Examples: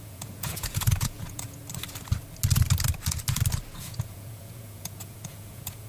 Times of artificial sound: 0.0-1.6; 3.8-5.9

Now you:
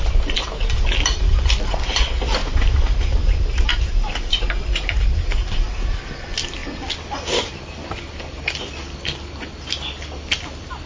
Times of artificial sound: 2.4-4.5; 5.1-6.0

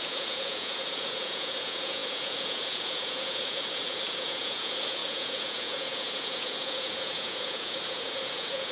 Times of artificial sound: 0.0-8.7

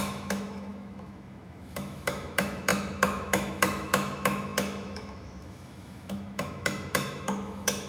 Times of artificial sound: 0.0-7.9